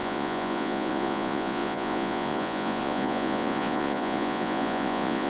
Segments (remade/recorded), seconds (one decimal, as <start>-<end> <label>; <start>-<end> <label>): 0.0-5.3 remade